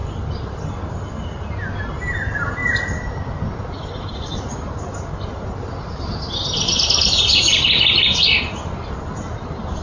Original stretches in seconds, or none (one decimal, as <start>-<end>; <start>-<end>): 0.0-9.8